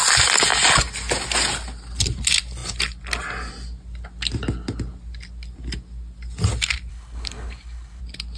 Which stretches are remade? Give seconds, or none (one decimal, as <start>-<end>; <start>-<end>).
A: 6.9-8.0